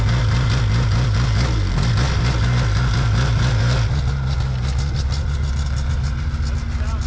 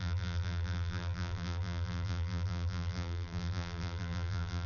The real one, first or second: first